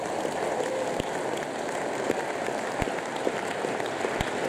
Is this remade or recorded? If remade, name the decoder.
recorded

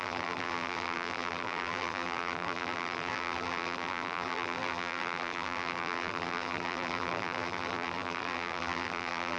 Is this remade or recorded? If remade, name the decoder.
remade, vocoder, BigVGAN v2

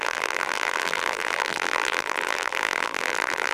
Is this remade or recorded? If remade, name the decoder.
remade, vocoder, BigVGAN v2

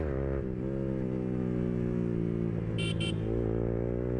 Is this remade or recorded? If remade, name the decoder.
recorded